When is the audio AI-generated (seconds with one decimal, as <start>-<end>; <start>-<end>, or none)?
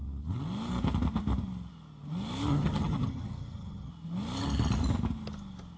2.5-3.9